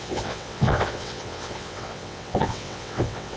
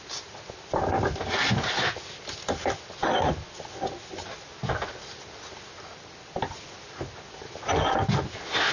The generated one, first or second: first